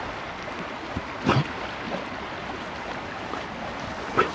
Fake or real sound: real